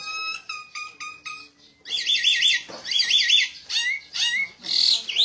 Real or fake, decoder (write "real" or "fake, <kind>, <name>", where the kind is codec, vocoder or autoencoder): real